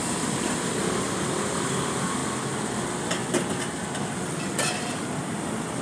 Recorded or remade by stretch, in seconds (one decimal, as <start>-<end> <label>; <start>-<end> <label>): 0.0-2.2 remade; 2.2-5.1 recorded; 5.1-5.8 remade